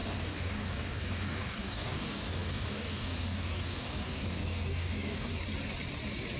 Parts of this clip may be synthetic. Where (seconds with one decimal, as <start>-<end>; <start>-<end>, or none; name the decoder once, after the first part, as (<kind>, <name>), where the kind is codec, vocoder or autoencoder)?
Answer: 0.0-5.3 (codec, DAC)